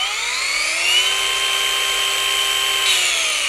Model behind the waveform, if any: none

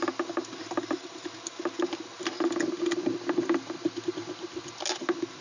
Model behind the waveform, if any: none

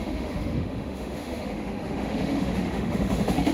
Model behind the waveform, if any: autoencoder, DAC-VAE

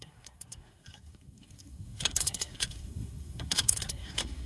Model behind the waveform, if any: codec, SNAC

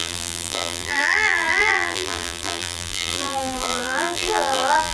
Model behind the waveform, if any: vocoder, BigVGAN v2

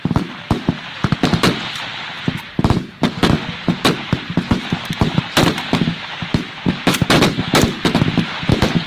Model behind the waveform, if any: none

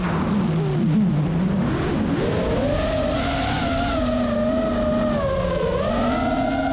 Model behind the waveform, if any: none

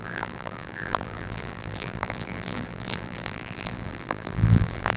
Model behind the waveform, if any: vocoder, BigVGAN v2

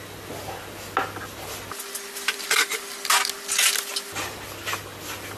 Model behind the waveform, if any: none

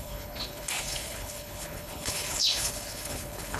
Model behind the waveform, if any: codec, HILCodec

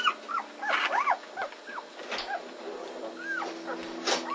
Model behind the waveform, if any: none